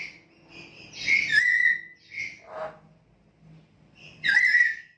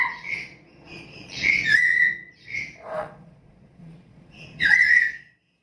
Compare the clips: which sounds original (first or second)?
first